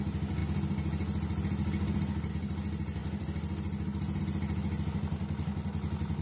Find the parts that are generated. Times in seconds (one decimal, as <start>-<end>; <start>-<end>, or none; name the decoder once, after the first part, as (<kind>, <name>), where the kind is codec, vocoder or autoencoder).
none